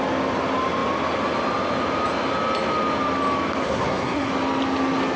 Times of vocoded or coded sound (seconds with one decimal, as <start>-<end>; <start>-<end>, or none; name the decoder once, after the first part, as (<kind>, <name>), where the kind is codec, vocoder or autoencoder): 3.6-4.3 (codec, SNAC)